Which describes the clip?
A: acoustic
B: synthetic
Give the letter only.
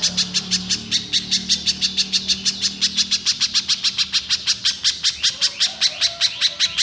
A